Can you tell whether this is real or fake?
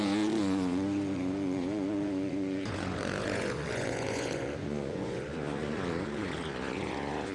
fake